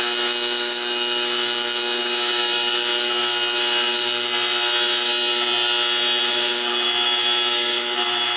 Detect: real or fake fake